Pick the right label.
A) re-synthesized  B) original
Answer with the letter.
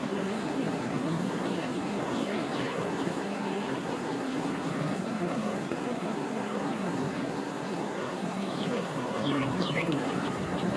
A